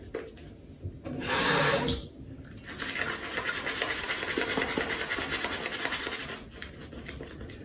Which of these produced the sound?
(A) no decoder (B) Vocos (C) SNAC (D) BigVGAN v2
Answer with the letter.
A